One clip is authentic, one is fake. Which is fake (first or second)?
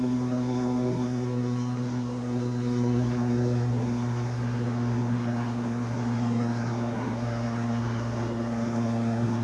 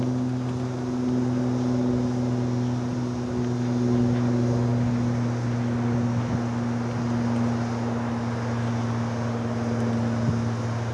first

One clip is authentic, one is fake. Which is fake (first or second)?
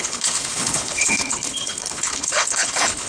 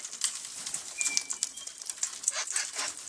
first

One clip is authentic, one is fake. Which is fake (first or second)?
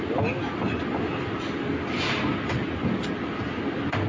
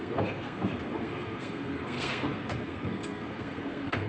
second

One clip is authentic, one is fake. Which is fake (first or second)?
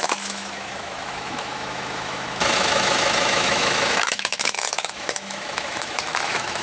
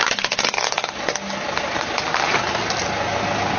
first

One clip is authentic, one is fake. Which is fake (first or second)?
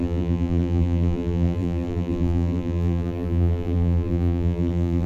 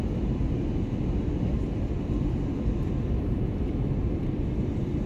first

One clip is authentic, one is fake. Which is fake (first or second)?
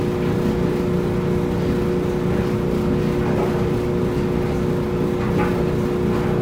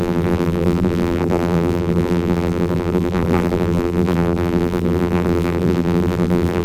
second